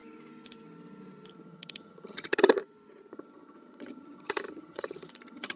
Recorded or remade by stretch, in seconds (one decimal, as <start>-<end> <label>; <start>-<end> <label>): 0.0-1.3 recorded; 1.3-2.6 remade; 2.6-3.1 recorded; 3.1-5.6 remade